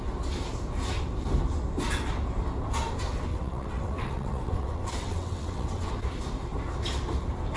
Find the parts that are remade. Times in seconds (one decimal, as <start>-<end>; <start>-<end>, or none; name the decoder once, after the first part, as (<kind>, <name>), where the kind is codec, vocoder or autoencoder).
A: 3.3-5.9 (vocoder, WaveNeXt)